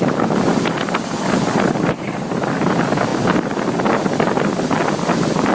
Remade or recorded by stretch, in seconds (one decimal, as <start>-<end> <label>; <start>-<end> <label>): 0.0-5.5 recorded

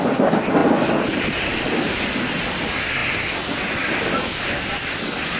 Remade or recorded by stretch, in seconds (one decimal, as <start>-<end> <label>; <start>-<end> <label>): 0.0-5.4 recorded

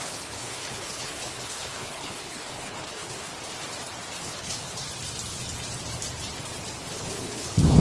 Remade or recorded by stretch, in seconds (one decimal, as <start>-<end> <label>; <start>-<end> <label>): 0.0-3.3 remade; 3.3-4.2 recorded; 4.2-4.8 remade; 4.8-6.9 recorded; 6.9-7.8 remade

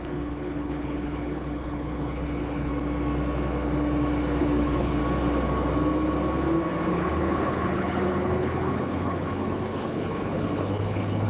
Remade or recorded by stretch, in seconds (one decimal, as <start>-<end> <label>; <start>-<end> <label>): 0.0-2.7 remade; 2.7-4.4 recorded; 4.4-5.0 remade; 5.0-6.9 recorded; 6.9-11.3 remade

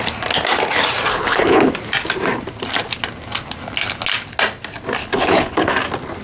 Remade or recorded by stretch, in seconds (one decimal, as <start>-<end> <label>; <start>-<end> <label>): 0.0-1.1 recorded; 1.1-1.7 remade; 1.7-5.0 recorded; 5.0-5.7 remade; 5.7-6.2 recorded